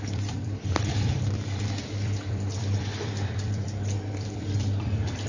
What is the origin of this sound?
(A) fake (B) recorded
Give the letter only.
A